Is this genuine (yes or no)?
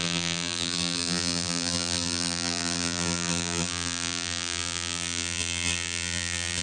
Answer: no